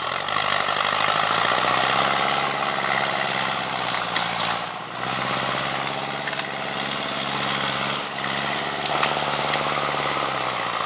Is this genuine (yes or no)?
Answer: yes